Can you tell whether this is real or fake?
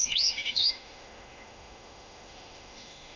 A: fake